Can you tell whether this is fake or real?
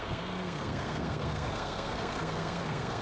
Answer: fake